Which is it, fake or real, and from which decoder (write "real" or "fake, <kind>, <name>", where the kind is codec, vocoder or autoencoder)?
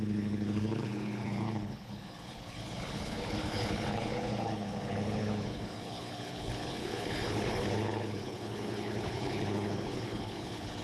fake, codec, HILCodec